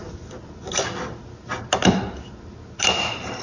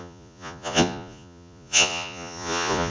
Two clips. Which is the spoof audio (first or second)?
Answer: second